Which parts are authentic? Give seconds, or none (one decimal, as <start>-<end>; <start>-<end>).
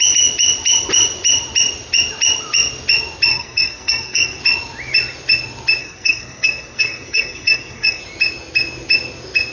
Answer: 0.0-3.3; 4.4-5.8; 8.0-9.5